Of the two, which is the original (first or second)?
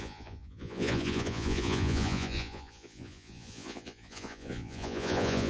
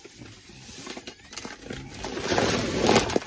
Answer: second